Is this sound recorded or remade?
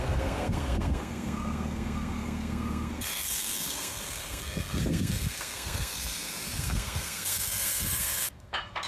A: remade